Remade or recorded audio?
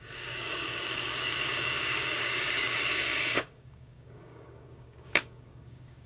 remade